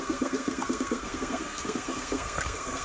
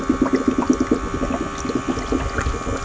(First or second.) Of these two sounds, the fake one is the first